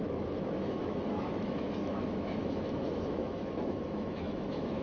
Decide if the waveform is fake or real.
fake